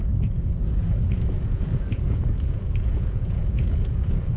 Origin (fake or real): fake